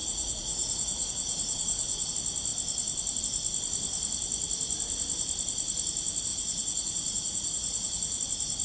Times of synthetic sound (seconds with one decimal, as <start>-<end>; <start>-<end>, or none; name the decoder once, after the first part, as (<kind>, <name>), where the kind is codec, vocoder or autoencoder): 0.0-2.1 (vocoder, Vocos); 6.3-8.2